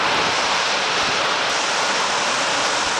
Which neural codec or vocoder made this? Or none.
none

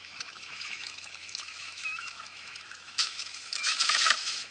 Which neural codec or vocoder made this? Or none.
autoencoder, DAC-VAE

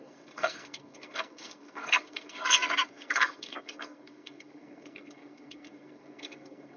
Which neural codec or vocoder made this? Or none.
codec, SNAC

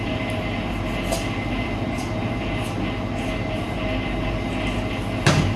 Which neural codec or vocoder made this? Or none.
none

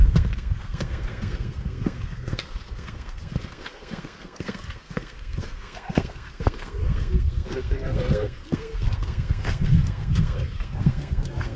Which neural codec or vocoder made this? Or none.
codec, SNAC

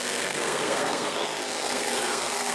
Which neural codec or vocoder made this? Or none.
codec, SNAC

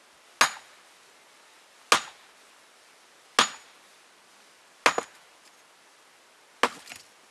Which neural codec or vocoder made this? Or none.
none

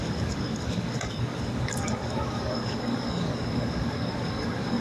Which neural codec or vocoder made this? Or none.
codec, DAC